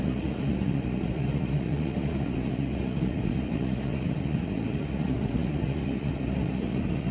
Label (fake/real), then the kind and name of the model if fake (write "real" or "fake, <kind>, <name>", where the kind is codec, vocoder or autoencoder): fake, vocoder, Vocos